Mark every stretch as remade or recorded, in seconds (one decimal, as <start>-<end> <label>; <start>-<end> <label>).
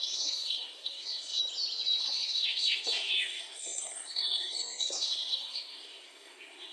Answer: 0.0-1.4 remade; 1.4-2.0 recorded; 2.0-6.7 remade